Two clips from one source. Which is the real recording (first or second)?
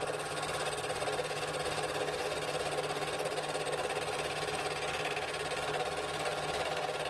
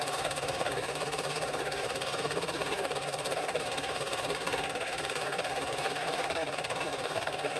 first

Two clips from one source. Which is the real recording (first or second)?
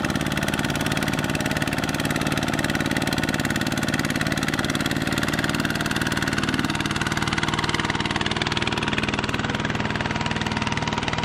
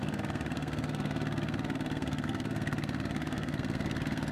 first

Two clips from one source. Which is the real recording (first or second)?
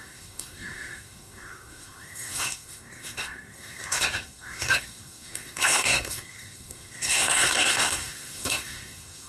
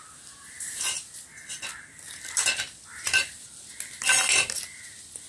second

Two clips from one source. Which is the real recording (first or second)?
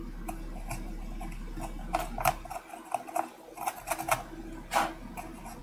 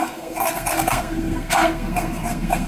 first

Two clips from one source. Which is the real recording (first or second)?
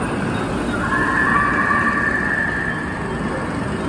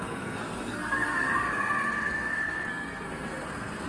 first